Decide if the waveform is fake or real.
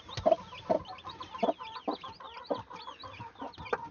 real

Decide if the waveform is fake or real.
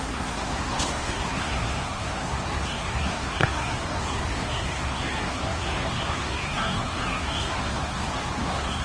fake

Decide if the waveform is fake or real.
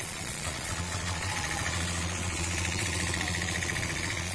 fake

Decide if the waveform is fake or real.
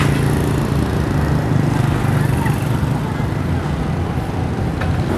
real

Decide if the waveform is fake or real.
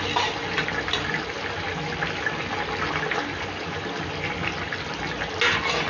real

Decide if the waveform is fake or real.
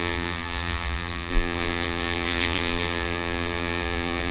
fake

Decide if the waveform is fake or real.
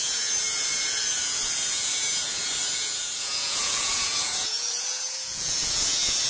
fake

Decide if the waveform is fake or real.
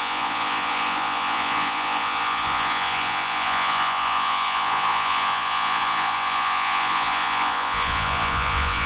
fake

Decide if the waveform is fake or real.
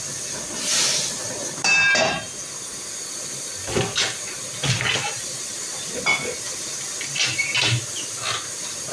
real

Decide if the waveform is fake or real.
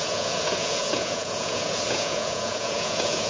fake